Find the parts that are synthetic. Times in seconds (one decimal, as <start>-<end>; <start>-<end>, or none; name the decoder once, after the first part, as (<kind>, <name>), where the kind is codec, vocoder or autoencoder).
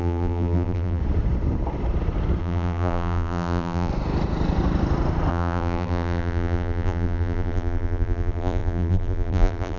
0.0-1.0 (vocoder, BigVGAN v2); 2.4-3.9; 5.3-9.8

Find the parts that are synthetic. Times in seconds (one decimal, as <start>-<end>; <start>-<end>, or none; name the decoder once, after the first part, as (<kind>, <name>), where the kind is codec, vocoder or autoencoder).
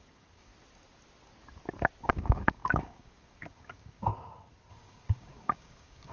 0.0-0.5 (codec, DAC); 2.1-4.1; 4.7-6.1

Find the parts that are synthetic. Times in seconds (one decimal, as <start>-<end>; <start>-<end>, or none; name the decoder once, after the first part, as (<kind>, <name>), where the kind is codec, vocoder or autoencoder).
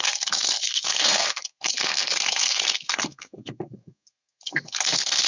0.0-5.3 (codec, SNAC)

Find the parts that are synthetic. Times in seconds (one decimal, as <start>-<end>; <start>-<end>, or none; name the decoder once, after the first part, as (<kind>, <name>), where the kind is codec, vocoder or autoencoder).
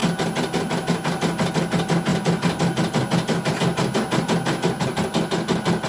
none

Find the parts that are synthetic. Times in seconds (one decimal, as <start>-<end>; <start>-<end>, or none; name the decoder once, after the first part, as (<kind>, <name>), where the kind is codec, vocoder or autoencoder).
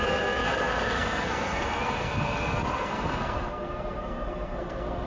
0.0-5.1 (codec, SNAC)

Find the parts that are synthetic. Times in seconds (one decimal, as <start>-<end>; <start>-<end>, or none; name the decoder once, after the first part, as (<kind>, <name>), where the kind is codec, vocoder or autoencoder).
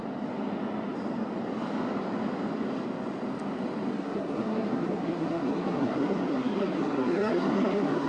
3.9-8.1 (codec, SNAC)